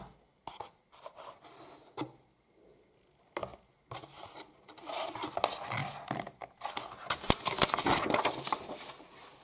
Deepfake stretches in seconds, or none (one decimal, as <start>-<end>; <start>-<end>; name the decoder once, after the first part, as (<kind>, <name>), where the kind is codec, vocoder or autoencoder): none

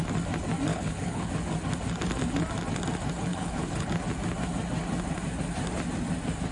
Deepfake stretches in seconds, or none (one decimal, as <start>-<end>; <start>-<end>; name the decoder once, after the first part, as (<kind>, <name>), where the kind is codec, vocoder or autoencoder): 0.7-1.3 (codec, HILCodec); 3.3-3.9

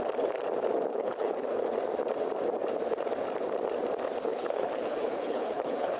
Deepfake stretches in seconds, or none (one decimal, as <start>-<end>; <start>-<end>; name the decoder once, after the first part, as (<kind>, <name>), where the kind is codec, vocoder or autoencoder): 0.9-1.7 (codec, HILCodec); 4.3-6.0

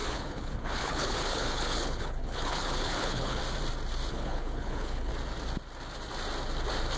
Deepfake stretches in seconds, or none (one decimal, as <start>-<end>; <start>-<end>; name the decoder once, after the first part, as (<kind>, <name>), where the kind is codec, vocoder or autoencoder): 0.0-3.4 (codec, HILCodec); 4.1-5.1

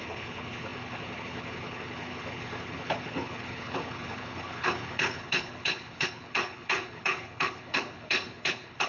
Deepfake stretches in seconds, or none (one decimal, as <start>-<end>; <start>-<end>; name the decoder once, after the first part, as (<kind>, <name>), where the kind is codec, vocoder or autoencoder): 0.0-8.9 (codec, HILCodec)

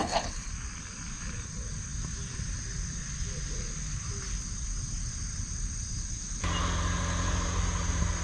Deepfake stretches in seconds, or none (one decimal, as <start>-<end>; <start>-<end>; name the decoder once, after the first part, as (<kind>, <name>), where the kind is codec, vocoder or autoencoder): 0.0-0.5 (codec, HILCodec)

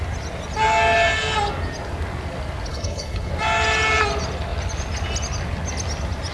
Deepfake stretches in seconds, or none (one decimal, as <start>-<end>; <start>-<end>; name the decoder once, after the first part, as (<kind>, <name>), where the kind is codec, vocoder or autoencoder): 2.7-3.3 (codec, HILCodec)